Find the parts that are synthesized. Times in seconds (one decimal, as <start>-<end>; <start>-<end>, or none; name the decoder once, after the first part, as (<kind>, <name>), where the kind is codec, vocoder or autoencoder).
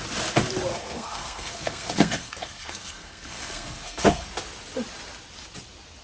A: 0.7-4.3 (codec, SNAC)